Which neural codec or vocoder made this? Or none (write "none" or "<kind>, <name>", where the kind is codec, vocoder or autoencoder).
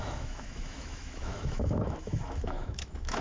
autoencoder, DAC-VAE